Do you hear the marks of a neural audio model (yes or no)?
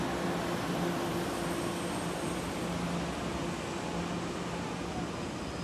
no